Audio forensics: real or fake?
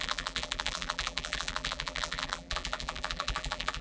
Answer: fake